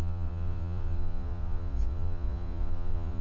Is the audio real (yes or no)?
no